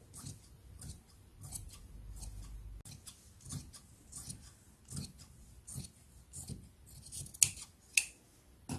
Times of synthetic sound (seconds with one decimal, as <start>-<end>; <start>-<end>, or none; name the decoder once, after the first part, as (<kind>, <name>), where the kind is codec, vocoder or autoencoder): none